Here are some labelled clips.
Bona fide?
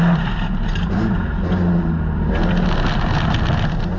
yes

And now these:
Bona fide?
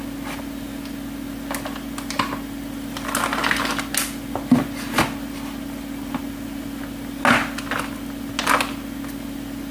yes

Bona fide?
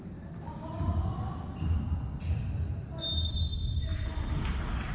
yes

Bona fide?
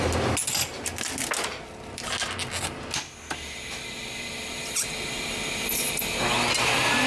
yes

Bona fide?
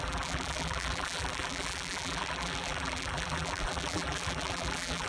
no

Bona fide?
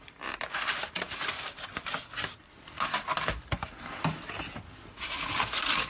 yes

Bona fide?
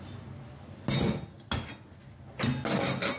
yes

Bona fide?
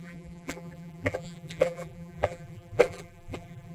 no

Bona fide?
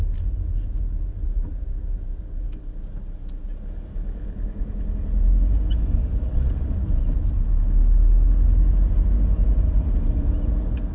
yes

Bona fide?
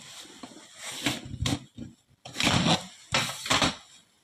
yes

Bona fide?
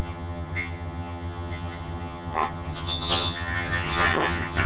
no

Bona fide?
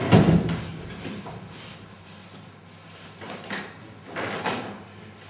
no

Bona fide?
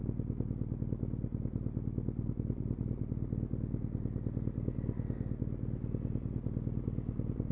yes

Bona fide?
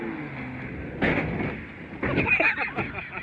yes